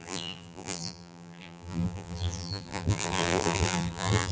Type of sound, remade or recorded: remade